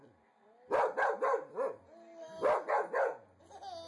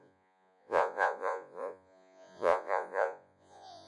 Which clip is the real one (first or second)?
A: first